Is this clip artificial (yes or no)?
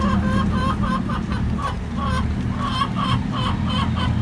no